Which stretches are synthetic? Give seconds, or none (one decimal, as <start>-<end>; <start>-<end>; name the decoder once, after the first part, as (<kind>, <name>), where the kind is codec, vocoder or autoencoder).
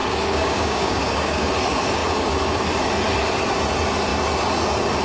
0.0-1.5 (codec, DAC)